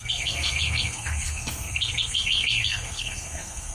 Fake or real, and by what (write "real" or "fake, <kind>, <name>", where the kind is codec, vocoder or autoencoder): fake, codec, SNAC